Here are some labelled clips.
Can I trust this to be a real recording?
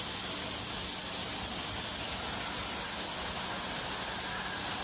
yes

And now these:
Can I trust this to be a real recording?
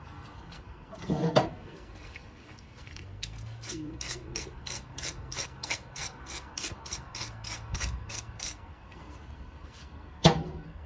no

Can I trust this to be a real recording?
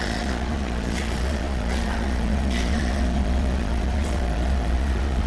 no